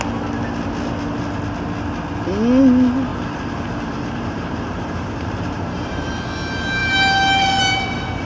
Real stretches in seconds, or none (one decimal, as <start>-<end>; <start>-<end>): 0.0-3.1; 6.1-8.3